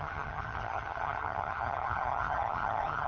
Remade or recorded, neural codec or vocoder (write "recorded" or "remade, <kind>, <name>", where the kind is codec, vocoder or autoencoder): remade, vocoder, HiFi-GAN